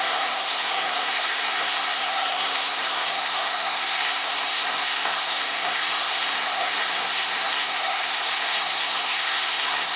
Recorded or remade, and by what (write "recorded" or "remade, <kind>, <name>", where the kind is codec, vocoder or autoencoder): remade, codec, SNAC